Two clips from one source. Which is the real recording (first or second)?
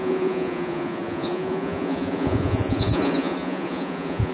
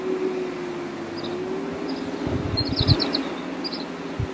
second